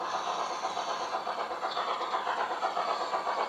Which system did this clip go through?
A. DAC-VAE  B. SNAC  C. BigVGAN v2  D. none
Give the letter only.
D